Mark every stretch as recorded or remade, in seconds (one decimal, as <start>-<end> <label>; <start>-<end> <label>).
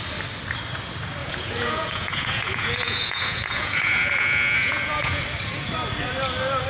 0.0-1.2 recorded; 1.2-5.2 remade; 5.2-6.7 recorded